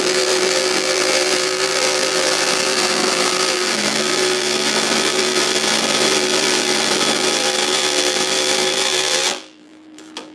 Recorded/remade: remade